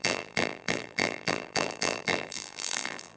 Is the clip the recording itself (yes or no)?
no